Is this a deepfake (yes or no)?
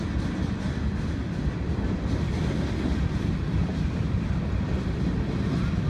no